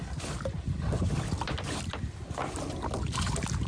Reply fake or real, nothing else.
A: real